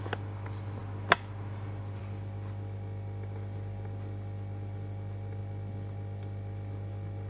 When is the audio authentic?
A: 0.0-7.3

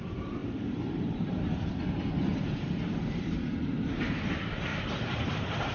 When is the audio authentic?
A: none

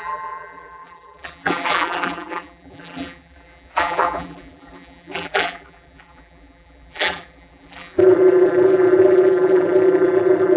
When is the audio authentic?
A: none